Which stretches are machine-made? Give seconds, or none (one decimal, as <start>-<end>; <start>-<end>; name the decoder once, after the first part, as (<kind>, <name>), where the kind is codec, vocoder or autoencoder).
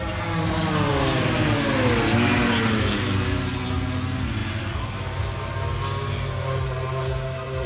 none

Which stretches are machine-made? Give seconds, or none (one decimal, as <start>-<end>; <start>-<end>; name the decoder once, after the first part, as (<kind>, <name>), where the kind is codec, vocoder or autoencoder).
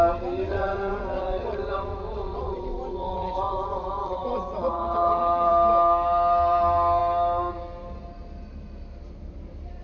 0.5-5.5 (vocoder, WaveNeXt)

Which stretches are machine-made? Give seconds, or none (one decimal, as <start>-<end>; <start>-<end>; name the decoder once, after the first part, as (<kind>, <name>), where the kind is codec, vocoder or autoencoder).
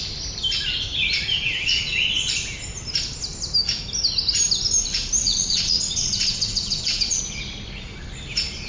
1.3-2.3 (vocoder, WaveNeXt); 5.2-7.2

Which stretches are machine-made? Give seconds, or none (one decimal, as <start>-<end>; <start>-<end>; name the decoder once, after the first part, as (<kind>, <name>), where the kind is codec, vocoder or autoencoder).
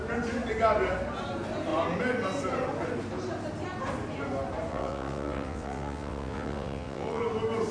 4.7-7.2 (vocoder, WaveNeXt)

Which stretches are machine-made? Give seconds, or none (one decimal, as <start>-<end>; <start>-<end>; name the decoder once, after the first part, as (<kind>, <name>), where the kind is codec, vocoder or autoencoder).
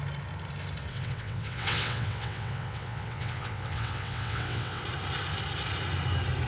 0.9-4.8 (vocoder, WaveNeXt)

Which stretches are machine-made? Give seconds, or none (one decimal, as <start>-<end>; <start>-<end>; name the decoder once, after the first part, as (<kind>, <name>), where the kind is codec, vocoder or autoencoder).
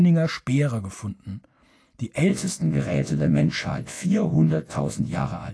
2.3-5.5 (vocoder, WaveNeXt)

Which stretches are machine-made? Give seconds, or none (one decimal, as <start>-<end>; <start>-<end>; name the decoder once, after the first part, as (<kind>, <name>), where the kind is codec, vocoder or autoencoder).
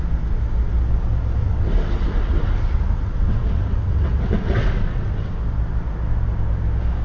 1.4-5.3 (vocoder, WaveNeXt)